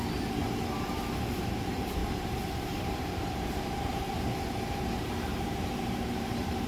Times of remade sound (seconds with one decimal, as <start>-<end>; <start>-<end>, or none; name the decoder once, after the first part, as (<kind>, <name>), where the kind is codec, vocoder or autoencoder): 0.0-0.4 (vocoder, BigVGAN v2); 1.3-2.0; 2.8-6.7